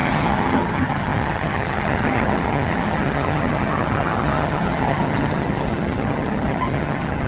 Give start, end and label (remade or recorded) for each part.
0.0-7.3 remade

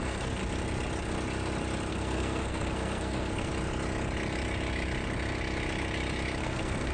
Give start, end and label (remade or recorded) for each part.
0.0-0.4 remade; 0.4-1.9 recorded; 1.9-3.5 remade; 3.5-6.4 recorded; 6.4-6.9 remade

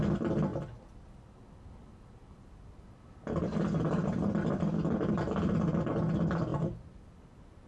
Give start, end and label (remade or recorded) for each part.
0.0-7.7 recorded